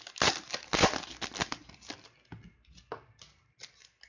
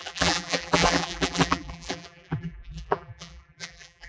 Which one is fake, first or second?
second